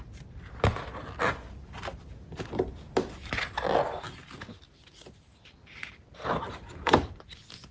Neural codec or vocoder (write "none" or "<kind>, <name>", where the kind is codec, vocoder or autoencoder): none